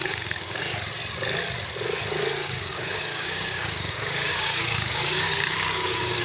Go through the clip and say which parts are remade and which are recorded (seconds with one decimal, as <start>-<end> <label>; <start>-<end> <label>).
0.0-0.6 remade; 0.6-2.4 recorded; 2.4-6.2 remade